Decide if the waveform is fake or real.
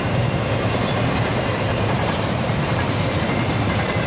fake